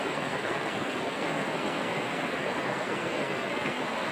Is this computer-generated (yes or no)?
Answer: yes